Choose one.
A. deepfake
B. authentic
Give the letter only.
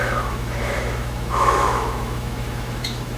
A